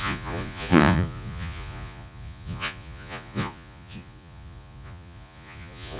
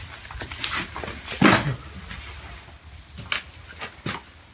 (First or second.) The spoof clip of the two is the first